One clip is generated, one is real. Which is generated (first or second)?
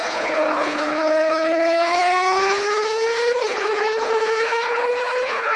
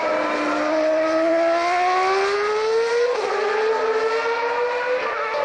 first